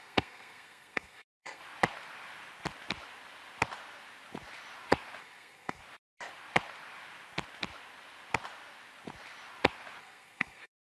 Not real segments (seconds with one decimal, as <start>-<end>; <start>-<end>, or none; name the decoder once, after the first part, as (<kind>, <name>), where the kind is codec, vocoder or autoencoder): 0.0-1.6 (codec, SNAC); 5.2-5.8; 10.0-10.8